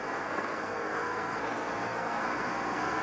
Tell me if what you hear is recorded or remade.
remade